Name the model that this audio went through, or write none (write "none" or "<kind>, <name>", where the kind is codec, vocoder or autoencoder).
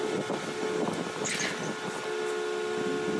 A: none